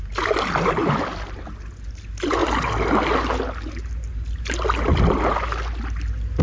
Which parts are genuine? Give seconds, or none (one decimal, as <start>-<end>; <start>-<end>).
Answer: 0.0-6.4